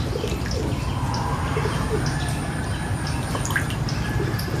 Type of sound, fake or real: real